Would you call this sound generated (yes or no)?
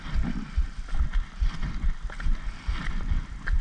no